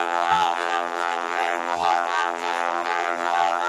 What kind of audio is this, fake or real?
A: fake